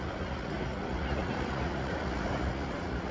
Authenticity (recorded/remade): remade